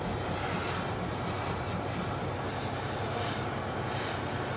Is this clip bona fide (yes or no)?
yes